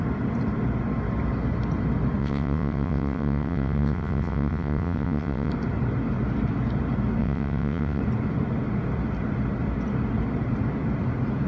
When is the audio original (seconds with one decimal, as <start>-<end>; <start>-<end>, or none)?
0.0-2.2; 5.5-7.2; 8.0-11.5